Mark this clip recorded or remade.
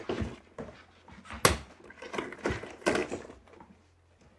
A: recorded